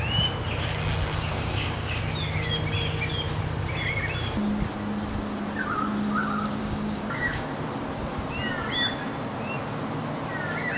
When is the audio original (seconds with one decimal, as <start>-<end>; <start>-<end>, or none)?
0.0-1.1; 2.0-6.6; 7.5-10.8